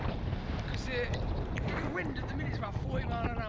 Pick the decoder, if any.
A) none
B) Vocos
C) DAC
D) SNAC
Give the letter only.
A